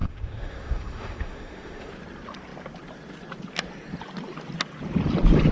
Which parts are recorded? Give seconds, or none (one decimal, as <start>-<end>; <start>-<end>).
1.9-5.5